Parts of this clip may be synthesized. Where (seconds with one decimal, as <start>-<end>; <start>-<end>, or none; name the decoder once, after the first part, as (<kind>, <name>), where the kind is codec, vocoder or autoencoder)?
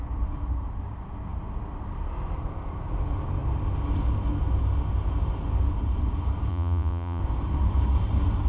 6.5-7.2 (vocoder, Vocos)